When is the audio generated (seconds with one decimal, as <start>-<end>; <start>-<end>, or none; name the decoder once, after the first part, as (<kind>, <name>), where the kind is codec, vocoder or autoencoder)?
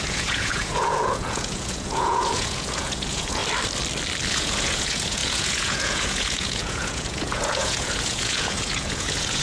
0.0-3.4 (vocoder, Vocos); 4.3-9.4